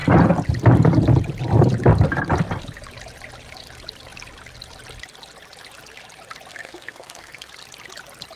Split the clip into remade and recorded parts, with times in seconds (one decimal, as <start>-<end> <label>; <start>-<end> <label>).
0.0-6.5 recorded; 6.5-7.5 remade; 7.5-8.4 recorded